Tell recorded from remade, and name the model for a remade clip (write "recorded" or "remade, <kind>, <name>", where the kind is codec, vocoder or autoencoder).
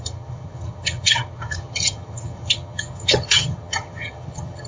remade, vocoder, HiFi-GAN